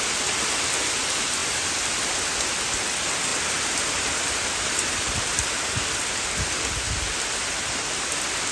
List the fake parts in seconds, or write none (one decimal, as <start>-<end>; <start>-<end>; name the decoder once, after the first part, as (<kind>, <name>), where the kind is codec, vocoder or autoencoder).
1.4-2.1 (vocoder, BigVGAN v2); 3.3-4.9